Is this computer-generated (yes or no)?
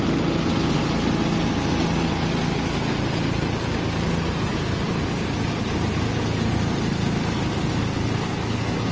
no